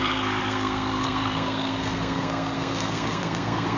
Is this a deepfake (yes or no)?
yes